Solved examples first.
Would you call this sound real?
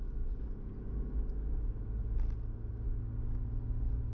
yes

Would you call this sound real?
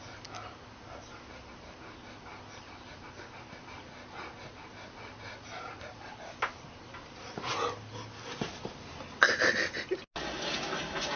yes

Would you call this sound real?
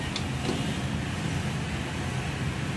yes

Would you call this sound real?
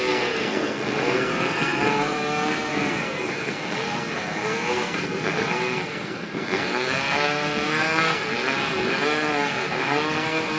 no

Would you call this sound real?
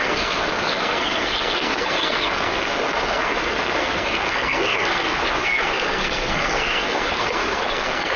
no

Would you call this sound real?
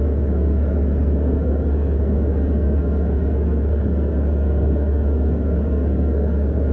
no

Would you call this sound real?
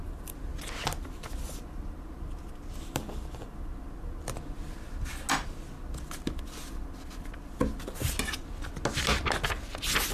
yes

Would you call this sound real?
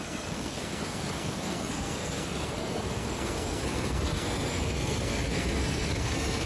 no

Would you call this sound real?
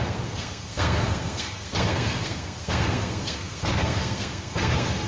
no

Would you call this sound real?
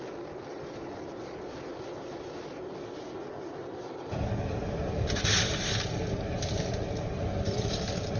yes